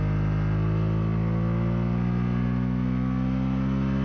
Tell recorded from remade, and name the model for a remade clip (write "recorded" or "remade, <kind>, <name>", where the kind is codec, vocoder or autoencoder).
recorded